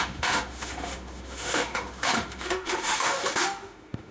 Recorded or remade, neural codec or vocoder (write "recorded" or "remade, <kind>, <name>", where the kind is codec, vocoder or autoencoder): remade, autoencoder, DAC-VAE